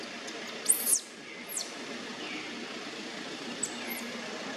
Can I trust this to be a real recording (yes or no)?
yes